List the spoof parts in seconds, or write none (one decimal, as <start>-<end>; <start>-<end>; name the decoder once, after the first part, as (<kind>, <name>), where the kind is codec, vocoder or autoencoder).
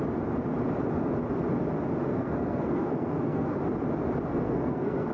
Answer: 2.1-3.6 (codec, SNAC); 4.3-5.1